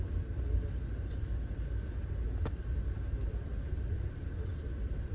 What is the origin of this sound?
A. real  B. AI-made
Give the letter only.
A